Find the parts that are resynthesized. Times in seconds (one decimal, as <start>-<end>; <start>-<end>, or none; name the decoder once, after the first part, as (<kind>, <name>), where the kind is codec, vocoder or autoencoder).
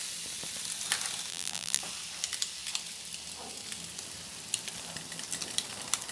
1.3-1.8 (vocoder, BigVGAN v2)